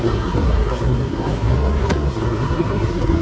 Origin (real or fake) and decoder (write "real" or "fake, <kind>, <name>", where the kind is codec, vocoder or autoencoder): fake, codec, SNAC